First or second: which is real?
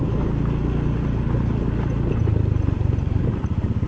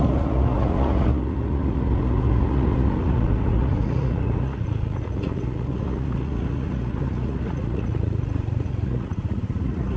first